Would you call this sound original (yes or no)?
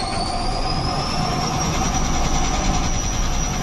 no